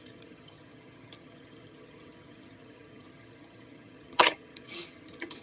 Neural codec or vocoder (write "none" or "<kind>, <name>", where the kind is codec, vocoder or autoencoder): vocoder, HiFi-GAN